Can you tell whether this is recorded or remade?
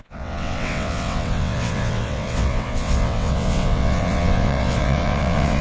remade